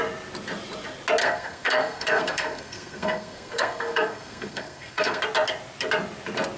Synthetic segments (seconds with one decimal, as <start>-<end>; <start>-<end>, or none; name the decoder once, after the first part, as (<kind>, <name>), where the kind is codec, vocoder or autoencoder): 1.2-5.2 (codec, SNAC)